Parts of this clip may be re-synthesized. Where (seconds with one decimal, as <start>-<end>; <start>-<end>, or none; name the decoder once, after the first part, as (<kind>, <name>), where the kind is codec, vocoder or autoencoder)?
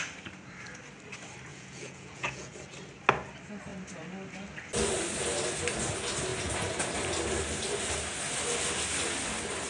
1.5-2.5 (vocoder, Vocos)